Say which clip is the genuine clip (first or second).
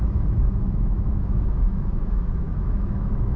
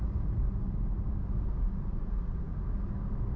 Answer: second